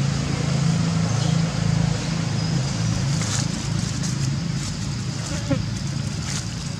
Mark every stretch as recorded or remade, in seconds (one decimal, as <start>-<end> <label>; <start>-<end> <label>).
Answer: 0.0-2.6 recorded; 2.6-3.3 remade; 3.3-3.8 recorded; 3.8-5.2 remade; 5.2-6.8 recorded